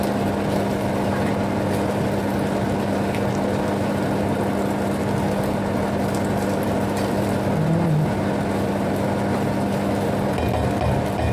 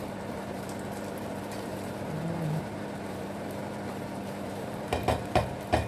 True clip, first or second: first